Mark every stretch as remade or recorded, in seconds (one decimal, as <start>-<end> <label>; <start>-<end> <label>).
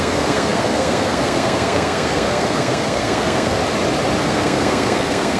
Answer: 0.0-3.6 remade; 3.6-4.2 recorded; 4.2-5.4 remade